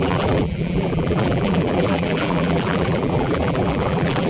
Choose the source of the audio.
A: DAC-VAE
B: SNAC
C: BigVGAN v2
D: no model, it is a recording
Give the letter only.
C